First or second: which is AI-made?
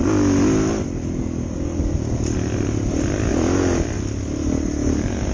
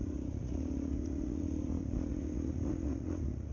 second